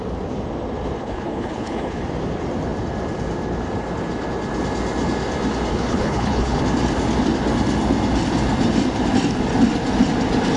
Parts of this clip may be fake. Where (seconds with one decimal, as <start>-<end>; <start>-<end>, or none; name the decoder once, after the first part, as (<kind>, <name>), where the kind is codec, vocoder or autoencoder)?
1.0-2.0 (codec, HILCodec); 5.7-6.6

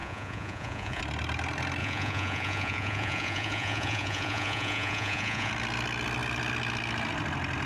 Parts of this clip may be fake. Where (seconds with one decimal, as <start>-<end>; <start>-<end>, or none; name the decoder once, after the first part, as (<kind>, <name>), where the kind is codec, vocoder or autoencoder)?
0.0-1.0 (vocoder, Vocos); 1.8-5.5

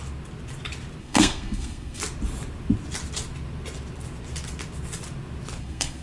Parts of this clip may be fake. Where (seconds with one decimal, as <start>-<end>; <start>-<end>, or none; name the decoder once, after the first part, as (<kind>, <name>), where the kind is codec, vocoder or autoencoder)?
1.0-2.0 (codec, SNAC); 5.6-6.0

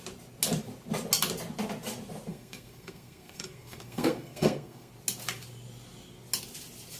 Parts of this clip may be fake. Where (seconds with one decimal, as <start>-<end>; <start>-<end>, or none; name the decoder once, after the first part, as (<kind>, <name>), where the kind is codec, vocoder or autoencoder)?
2.3-4.9 (codec, SNAC)